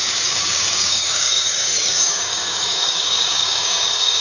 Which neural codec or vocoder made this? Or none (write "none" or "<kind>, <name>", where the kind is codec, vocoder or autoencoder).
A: codec, DAC